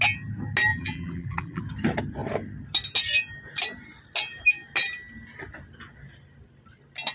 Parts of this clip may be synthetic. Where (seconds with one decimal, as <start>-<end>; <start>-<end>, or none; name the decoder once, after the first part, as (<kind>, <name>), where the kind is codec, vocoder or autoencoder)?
0.7-1.6 (vocoder, BigVGAN v2)